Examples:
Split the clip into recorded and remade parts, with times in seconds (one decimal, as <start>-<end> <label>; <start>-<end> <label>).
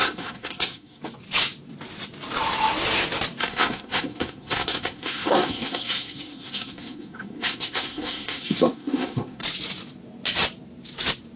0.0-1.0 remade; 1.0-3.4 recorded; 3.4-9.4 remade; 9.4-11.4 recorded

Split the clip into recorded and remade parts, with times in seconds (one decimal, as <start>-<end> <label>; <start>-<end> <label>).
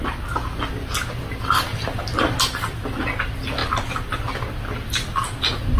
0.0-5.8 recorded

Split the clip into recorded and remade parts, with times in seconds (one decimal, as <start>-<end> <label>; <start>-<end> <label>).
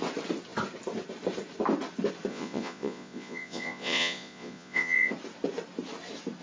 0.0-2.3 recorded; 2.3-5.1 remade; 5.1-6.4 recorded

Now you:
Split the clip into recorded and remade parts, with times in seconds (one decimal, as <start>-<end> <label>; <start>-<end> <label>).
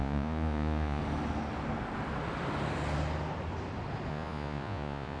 0.0-1.0 remade; 1.0-4.1 recorded; 4.1-5.2 remade